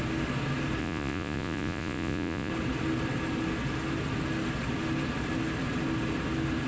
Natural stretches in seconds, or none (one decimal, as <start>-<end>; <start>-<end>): 0.0-0.8; 2.5-6.7

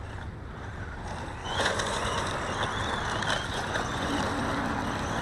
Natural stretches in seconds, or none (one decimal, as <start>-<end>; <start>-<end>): 0.0-1.4; 2.3-3.5; 4.1-5.2

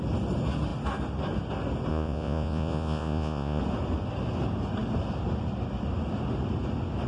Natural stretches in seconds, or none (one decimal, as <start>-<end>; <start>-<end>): 0.0-1.9; 3.6-7.1

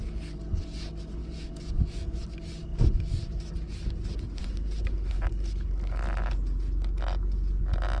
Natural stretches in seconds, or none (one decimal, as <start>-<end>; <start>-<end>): 0.0-1.2; 2.2-8.0